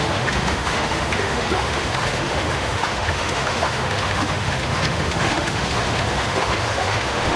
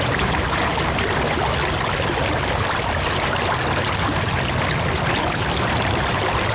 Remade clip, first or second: first